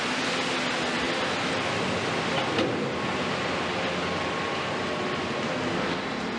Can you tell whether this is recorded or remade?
recorded